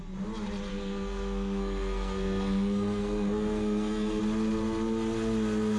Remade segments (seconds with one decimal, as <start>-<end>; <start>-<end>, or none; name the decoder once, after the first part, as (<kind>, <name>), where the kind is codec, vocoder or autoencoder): 0.7-4.2 (codec, SNAC)